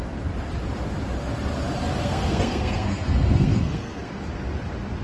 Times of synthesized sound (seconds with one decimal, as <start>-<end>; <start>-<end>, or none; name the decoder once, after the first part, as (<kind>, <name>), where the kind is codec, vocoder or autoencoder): 2.0-4.2 (codec, SNAC)